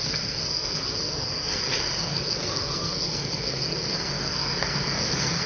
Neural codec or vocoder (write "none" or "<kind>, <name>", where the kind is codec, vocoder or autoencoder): codec, SNAC